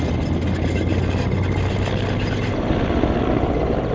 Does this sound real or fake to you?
real